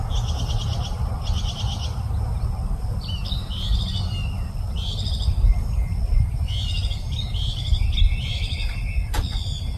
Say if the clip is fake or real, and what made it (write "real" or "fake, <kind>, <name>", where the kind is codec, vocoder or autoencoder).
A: real